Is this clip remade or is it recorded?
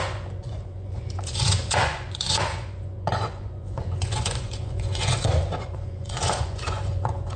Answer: remade